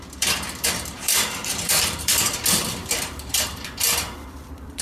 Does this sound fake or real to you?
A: fake